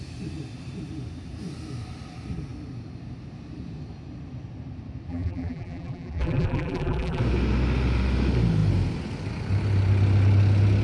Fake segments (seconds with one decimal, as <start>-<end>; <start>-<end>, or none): 5.1-7.2